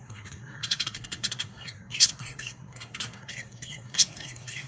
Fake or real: fake